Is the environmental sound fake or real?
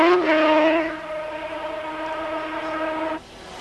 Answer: real